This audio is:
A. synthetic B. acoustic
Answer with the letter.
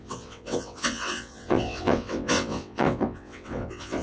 A